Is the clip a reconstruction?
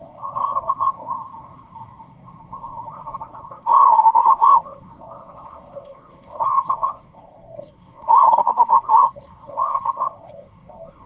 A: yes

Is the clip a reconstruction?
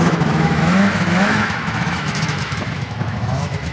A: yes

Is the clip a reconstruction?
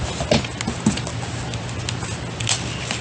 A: no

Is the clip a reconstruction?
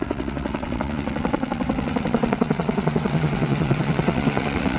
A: yes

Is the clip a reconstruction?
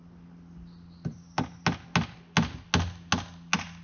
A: no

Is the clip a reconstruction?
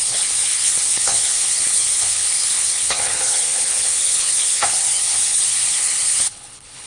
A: yes